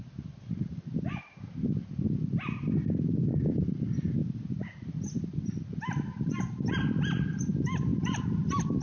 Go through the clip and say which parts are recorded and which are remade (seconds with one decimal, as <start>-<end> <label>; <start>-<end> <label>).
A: 0.0-4.2 recorded; 4.2-7.4 remade; 7.4-7.9 recorded; 7.9-8.8 remade